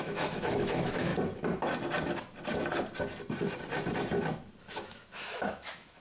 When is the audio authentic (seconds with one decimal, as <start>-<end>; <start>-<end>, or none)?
1.1-4.7